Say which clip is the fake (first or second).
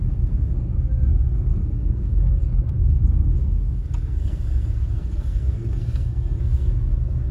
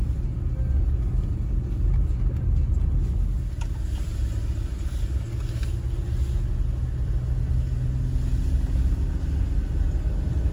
first